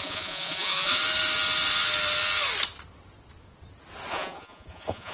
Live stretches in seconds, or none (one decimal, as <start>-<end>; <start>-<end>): 1.0-4.1